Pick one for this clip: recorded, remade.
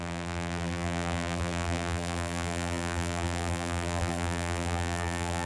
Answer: remade